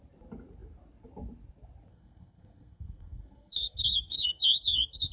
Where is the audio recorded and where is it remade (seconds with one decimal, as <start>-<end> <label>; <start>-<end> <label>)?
0.0-1.9 recorded; 1.9-5.1 remade